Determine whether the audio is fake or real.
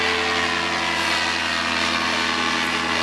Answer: real